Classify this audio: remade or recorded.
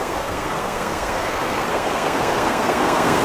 remade